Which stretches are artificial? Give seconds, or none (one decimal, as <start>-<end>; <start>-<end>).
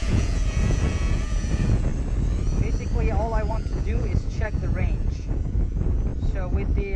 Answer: 0.0-1.9; 3.5-6.1